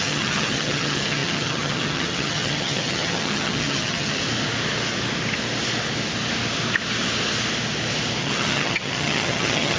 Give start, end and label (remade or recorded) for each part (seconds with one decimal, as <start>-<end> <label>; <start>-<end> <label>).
0.0-4.2 remade; 4.2-8.2 recorded; 8.2-9.8 remade